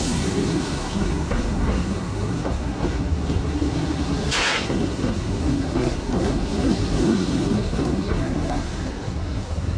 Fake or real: fake